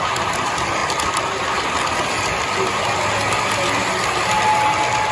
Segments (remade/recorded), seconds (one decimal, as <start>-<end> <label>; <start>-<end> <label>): 0.0-5.1 recorded